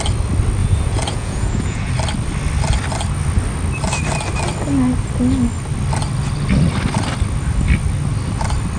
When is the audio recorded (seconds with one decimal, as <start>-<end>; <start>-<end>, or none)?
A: 0.0-0.6; 1.9-8.8

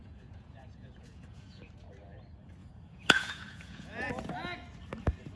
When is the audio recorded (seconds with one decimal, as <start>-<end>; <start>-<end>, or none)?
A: 1.7-2.6; 4.1-5.4

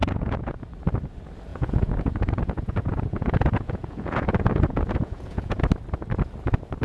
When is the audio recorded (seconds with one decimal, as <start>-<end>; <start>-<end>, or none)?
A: 0.6-1.5; 5.6-6.8

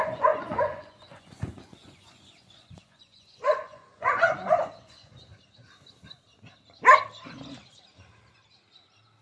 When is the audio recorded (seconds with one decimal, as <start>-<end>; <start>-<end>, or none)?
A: 5.3-9.2

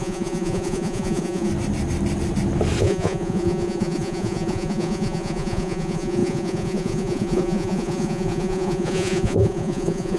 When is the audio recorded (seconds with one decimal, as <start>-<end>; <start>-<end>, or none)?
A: 1.5-2.8

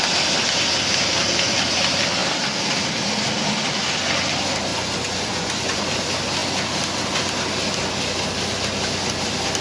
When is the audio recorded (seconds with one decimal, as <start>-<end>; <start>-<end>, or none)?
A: 0.0-4.7; 5.8-9.6

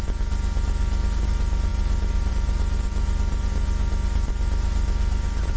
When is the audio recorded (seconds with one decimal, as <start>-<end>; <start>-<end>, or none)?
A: 0.0-5.6

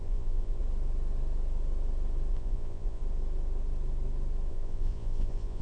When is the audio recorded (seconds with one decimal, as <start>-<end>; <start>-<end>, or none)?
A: 0.6-2.3; 3.0-4.5